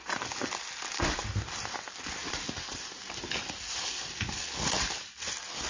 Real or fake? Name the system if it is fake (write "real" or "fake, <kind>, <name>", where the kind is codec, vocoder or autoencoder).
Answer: real